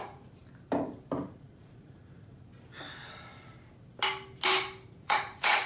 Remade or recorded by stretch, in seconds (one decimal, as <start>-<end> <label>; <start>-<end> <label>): 0.0-0.4 remade; 0.4-1.4 recorded; 1.4-2.5 remade; 2.5-4.9 recorded; 4.9-5.7 remade

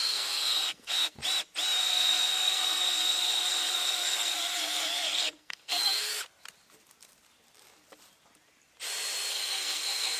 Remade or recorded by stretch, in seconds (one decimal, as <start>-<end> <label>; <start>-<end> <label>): 0.0-1.2 remade; 1.2-1.8 recorded; 1.8-6.1 remade; 6.1-9.3 recorded; 9.3-10.2 remade

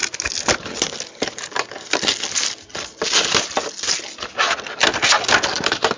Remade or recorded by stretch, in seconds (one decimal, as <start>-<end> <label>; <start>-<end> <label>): 0.0-6.0 recorded

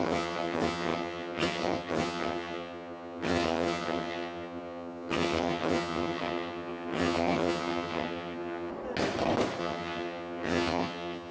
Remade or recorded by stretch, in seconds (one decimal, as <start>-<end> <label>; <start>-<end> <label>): 0.0-8.7 remade; 8.7-9.6 recorded; 9.6-11.3 remade

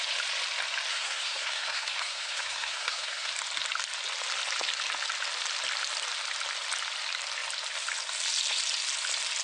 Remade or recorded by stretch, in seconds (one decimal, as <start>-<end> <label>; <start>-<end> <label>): 0.0-0.9 recorded; 0.9-3.3 remade; 3.3-9.4 recorded

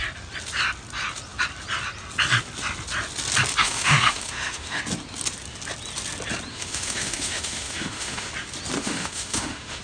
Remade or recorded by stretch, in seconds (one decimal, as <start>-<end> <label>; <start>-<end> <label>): 0.0-3.6 recorded; 3.6-4.8 remade; 4.8-6.5 recorded; 6.5-8.3 remade; 8.3-8.8 recorded; 8.8-9.8 remade